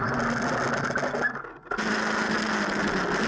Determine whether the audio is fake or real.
real